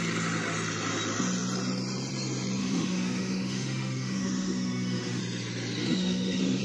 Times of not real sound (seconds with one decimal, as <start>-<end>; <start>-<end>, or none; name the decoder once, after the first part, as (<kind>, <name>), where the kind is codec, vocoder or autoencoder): 2.6-5.2 (autoencoder, DAC-VAE); 5.8-6.6